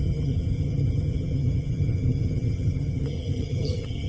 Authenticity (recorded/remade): remade